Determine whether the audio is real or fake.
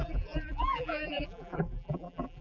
fake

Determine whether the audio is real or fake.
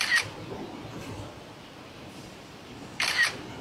fake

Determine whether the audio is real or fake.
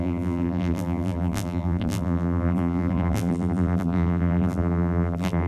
fake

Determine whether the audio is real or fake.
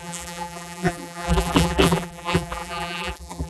fake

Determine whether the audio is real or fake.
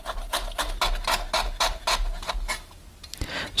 real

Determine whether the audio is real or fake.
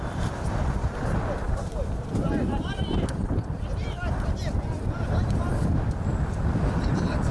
fake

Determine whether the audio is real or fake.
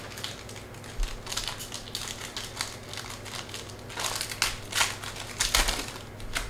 real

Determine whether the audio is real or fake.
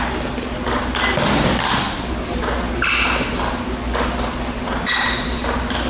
real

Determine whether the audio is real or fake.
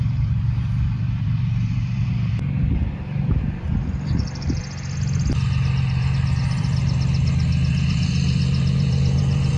fake